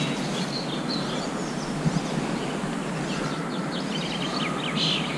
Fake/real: real